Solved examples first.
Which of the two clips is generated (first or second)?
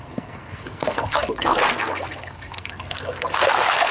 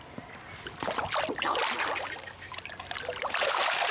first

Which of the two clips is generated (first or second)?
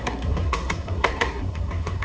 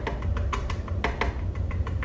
first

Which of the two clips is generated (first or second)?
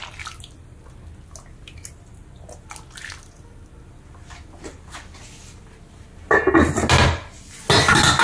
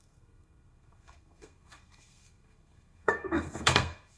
second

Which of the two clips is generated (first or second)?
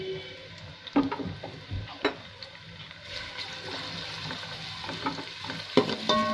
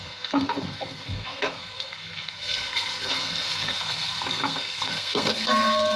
second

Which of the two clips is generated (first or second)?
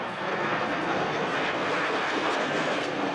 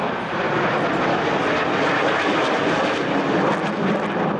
first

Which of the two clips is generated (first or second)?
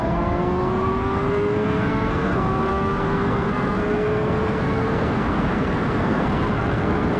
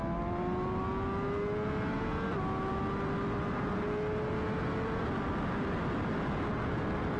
first